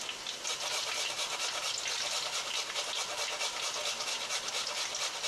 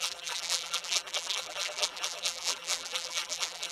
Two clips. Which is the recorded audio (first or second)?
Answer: first